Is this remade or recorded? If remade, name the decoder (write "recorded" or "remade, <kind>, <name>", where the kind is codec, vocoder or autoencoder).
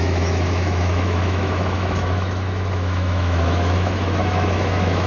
remade, autoencoder, DAC-VAE